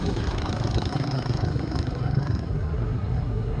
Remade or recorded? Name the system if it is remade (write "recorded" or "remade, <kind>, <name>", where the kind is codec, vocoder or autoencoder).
remade, codec, SNAC